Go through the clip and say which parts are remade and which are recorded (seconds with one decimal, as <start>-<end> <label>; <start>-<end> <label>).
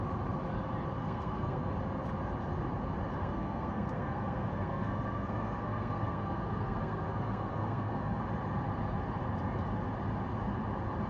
0.0-1.0 recorded; 1.0-1.7 remade; 1.7-3.2 recorded; 3.2-8.2 remade; 8.2-11.1 recorded